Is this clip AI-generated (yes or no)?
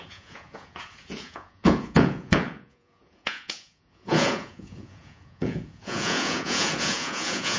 yes